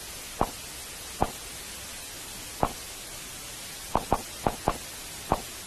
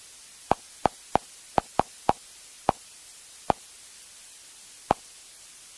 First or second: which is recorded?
first